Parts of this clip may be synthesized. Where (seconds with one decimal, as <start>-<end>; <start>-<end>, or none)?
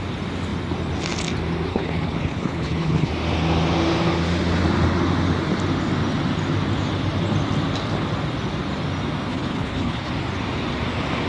1.7-3.1; 9.3-10.1